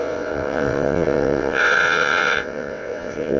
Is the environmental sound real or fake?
fake